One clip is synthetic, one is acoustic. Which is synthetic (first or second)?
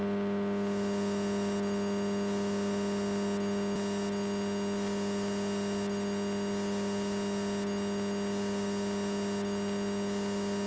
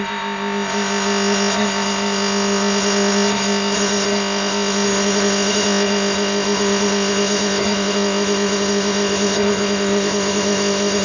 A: second